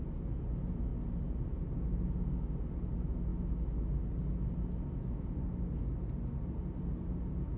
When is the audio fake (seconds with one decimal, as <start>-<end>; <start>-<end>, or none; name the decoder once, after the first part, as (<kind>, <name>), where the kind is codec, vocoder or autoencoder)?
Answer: none